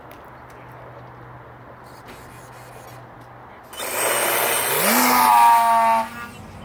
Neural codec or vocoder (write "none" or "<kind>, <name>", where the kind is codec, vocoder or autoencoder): none